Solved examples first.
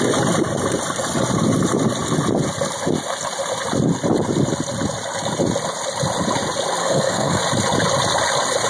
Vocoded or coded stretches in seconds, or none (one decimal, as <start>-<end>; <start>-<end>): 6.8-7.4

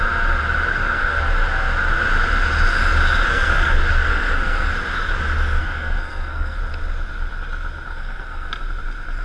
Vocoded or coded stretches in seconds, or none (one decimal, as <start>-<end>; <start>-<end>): 0.7-1.2; 3.3-4.7; 5.6-6.6; 7.9-8.5

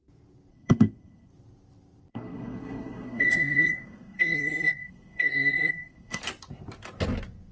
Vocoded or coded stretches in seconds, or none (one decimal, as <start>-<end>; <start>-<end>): 0.5-1.3; 2.1-6.2